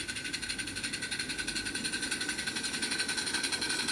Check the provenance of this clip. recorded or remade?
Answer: recorded